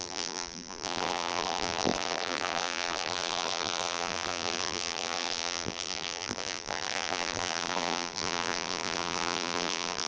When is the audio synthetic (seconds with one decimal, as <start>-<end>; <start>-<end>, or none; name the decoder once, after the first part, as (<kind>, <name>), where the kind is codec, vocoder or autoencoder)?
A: 0.0-10.1 (vocoder, BigVGAN v2)